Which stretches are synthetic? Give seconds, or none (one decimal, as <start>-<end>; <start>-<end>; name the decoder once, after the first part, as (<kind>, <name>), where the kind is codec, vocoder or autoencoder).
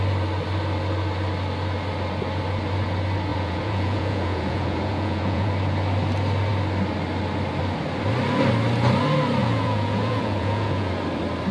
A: 3.3-5.5 (vocoder, Vocos); 9.4-11.0